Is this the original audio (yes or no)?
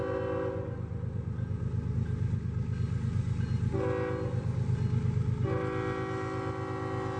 yes